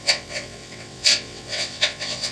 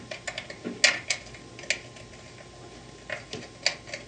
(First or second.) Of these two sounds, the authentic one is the second